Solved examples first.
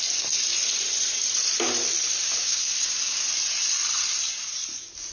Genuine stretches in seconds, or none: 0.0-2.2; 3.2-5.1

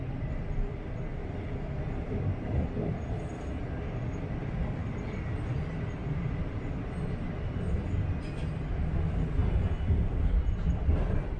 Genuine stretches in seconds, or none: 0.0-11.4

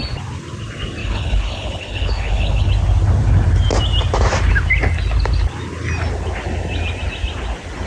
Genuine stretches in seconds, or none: 0.0-1.0; 2.7-7.9

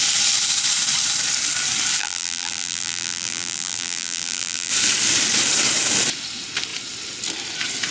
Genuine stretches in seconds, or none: 0.0-2.0; 4.7-7.9